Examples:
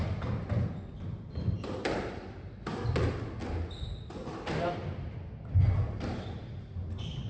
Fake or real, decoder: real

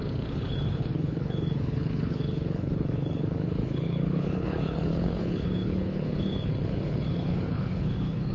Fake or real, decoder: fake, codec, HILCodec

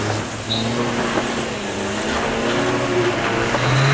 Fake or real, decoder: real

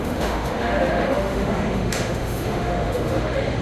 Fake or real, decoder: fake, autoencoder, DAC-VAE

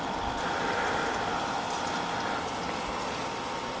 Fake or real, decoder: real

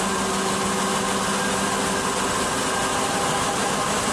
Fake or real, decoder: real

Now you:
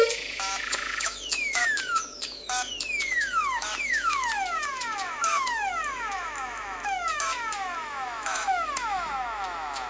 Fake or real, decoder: fake, autoencoder, DAC-VAE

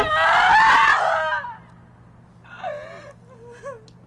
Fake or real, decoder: real